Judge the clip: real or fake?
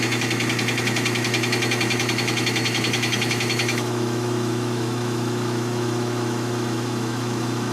fake